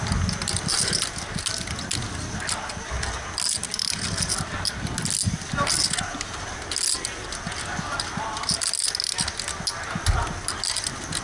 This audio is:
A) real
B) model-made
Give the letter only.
A